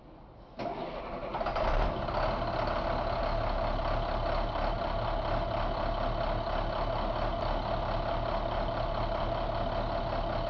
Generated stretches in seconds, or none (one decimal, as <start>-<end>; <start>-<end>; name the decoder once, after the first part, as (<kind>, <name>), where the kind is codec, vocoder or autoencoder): none